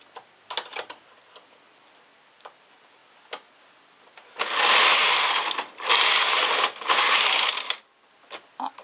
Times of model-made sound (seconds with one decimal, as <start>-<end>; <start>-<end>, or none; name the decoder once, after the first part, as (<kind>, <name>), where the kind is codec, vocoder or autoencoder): none